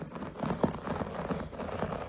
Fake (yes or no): no